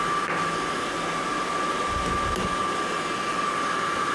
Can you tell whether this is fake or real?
real